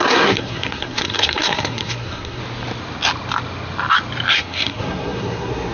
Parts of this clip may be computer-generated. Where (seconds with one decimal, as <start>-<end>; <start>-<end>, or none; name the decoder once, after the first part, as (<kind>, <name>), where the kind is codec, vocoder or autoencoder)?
0.0-2.4 (codec, SNAC); 4.3-5.7